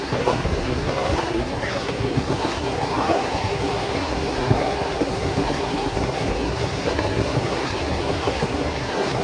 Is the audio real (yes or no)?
no